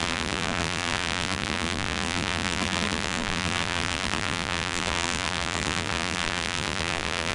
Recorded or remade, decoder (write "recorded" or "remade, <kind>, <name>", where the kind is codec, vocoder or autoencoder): remade, vocoder, BigVGAN v2